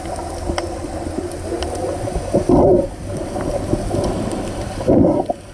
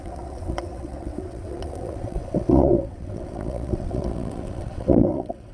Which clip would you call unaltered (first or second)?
first